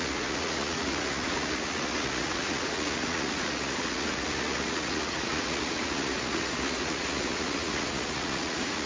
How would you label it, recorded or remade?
remade